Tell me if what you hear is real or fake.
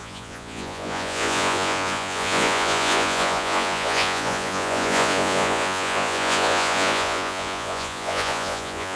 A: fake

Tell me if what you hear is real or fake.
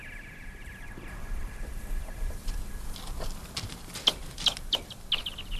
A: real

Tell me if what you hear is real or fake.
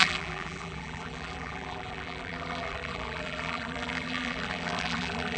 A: fake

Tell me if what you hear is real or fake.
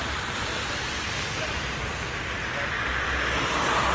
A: real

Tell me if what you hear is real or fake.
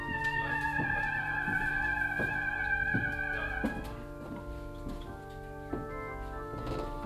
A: real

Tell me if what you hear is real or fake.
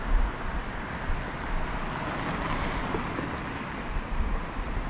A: real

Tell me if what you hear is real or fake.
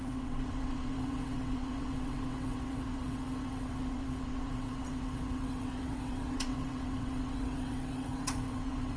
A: fake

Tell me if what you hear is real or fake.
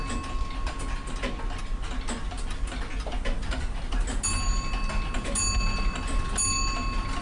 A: real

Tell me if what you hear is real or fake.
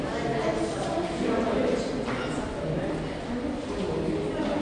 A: real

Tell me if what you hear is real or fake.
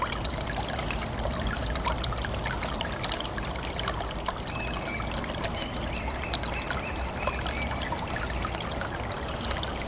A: real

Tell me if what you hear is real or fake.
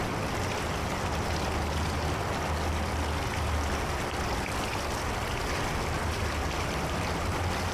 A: real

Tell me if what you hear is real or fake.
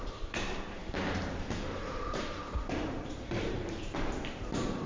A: fake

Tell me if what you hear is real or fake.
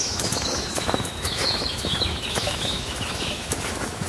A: fake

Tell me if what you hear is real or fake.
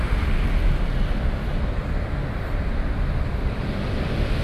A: real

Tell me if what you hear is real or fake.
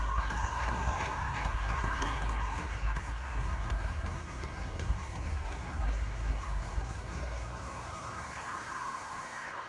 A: fake